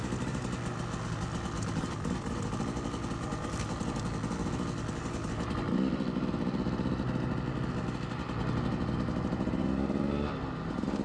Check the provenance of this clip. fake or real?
real